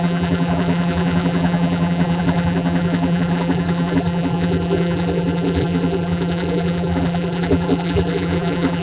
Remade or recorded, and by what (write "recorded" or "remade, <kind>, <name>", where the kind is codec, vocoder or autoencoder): remade, vocoder, BigVGAN v2